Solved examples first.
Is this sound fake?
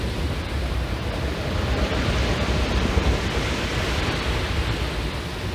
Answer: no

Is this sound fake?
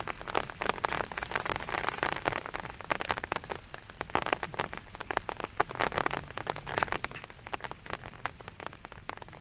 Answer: no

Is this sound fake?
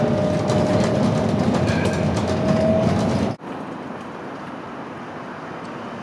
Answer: no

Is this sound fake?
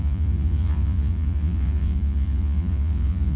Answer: yes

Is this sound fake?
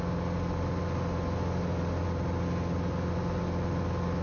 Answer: no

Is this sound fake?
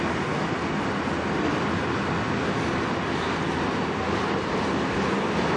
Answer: no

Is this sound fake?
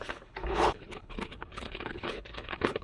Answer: yes